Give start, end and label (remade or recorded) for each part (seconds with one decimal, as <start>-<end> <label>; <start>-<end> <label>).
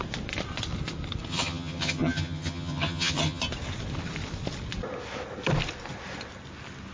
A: 0.0-1.3 recorded; 1.3-3.4 remade; 3.4-6.9 recorded